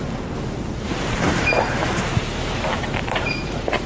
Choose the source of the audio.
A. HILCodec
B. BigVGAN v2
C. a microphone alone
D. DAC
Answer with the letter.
B